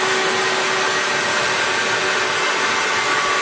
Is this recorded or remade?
recorded